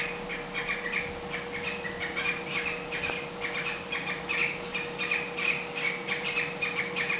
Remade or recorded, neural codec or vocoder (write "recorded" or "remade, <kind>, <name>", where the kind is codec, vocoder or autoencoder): remade, vocoder, BigVGAN v2